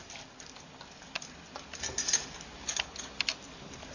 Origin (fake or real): real